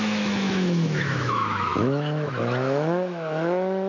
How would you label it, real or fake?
fake